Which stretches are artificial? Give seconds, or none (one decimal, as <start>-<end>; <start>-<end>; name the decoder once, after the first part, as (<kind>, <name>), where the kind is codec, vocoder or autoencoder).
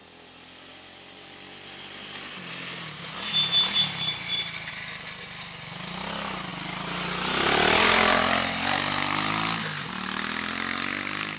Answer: none